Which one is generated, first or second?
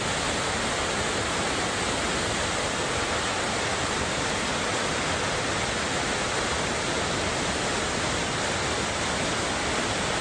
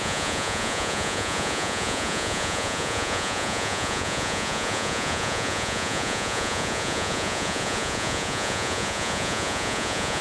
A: second